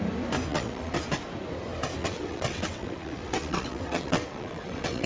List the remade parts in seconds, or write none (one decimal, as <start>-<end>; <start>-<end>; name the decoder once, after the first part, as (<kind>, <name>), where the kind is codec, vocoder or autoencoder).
0.5-1.0 (vocoder, WaveNeXt); 2.0-5.1